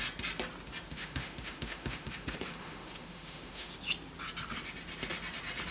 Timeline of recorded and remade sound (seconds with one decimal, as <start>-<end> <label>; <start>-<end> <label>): 0.0-0.9 recorded; 0.9-3.7 remade; 3.7-5.7 recorded